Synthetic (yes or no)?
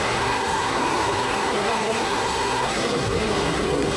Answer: yes